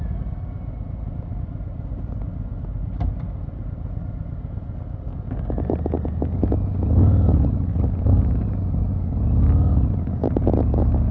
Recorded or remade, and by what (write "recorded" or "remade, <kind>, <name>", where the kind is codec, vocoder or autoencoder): recorded